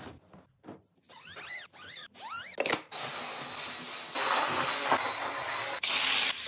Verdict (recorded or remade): recorded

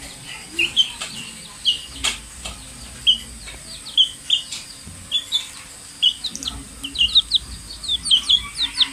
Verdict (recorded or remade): recorded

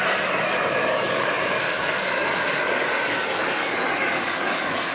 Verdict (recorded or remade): remade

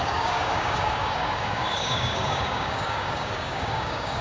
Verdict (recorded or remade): remade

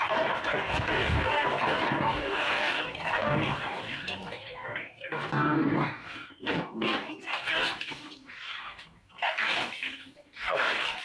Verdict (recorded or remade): remade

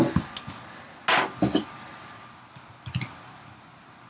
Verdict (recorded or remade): recorded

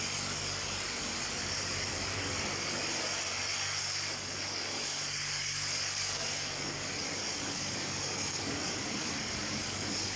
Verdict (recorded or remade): remade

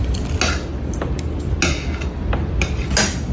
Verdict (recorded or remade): recorded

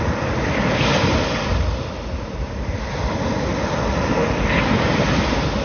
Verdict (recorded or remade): recorded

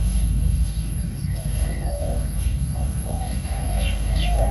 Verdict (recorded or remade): remade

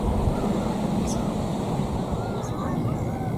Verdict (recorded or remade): recorded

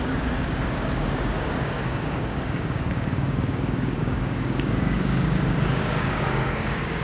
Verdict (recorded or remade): remade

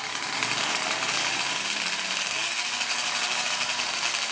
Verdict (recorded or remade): remade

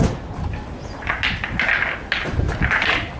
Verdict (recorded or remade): recorded